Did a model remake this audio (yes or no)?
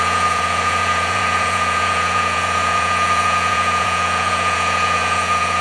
yes